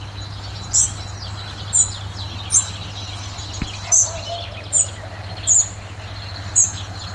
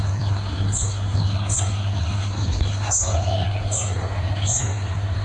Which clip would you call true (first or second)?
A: first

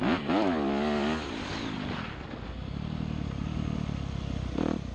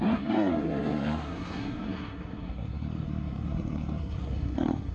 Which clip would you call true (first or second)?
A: first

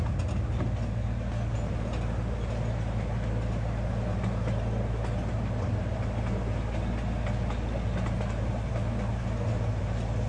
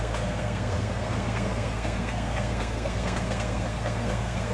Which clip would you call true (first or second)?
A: first